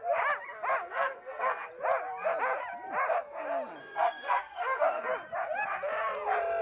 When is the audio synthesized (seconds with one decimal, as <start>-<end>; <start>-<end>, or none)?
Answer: 0.8-1.7; 3.8-5.1